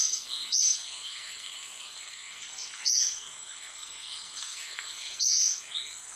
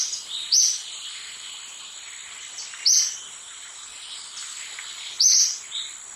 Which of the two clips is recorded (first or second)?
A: second